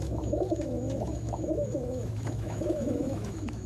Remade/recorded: remade